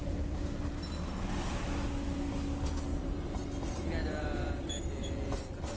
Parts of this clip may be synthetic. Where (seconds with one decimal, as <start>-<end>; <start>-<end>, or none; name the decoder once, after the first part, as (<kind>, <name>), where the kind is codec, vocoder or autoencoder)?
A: 0.0-0.6 (vocoder, BigVGAN v2); 2.9-3.4; 4.0-4.7

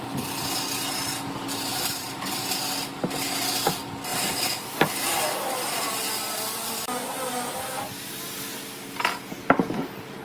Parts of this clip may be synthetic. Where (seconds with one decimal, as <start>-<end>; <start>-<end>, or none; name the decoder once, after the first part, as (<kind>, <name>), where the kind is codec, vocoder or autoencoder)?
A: 1.7-2.4 (vocoder, BigVGAN v2); 4.1-5.9

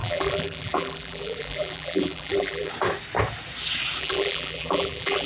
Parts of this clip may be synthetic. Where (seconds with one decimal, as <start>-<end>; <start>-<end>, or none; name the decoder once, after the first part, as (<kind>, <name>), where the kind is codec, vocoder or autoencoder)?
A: 0.0-2.7 (vocoder, BigVGAN v2); 4.0-5.3

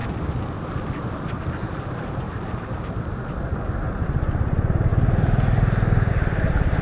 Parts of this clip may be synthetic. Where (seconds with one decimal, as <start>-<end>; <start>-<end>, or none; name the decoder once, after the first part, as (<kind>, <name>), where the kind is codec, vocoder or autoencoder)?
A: 1.8-4.9 (vocoder, BigVGAN v2); 6.1-6.8

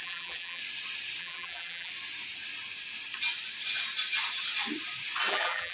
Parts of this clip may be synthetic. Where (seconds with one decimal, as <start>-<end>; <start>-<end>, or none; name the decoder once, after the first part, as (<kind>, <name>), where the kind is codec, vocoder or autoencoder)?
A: 0.0-0.6 (vocoder, BigVGAN v2); 1.2-1.9; 5.3-5.7